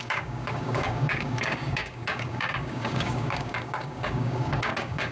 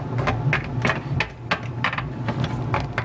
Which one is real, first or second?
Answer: second